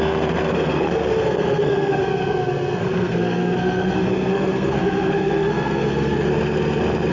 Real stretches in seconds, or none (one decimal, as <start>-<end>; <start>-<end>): 6.3-7.1